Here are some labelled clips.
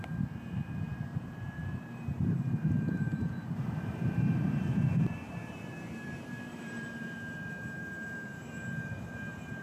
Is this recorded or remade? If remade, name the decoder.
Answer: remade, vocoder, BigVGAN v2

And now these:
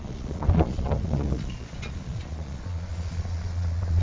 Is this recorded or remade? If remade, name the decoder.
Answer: remade, vocoder, Vocos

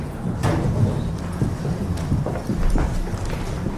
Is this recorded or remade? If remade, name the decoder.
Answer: recorded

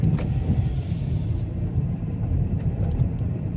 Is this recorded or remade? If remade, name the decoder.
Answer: remade, vocoder, BigVGAN v2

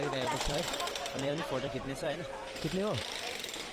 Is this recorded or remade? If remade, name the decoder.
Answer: remade, vocoder, BigVGAN v2